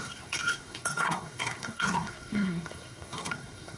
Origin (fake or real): fake